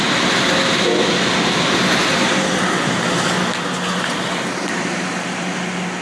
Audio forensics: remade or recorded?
recorded